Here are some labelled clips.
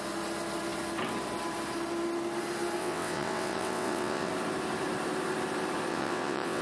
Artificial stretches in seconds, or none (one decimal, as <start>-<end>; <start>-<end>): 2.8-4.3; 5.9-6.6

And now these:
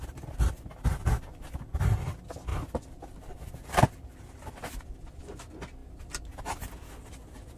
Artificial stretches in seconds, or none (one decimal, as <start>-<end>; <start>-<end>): none

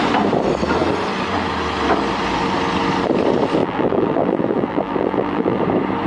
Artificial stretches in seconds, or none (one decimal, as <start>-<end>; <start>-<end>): 3.6-5.6

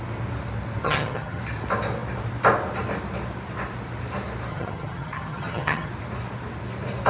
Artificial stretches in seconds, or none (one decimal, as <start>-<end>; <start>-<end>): 0.8-1.4; 4.5-5.9